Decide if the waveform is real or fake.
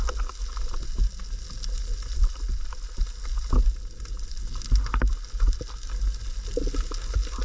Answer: real